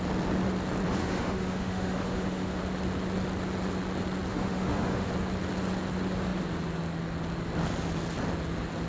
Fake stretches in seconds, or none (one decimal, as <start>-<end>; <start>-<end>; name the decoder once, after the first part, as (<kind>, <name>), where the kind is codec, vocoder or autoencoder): 1.0-2.6 (autoencoder, DAC-VAE); 4.3-5.1